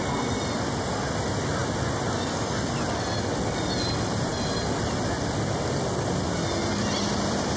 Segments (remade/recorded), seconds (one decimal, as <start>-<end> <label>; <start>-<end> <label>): 0.0-7.6 recorded